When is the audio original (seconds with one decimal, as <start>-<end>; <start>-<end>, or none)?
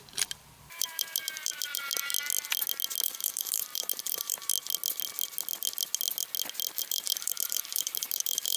2.1-3.0; 4.5-6.8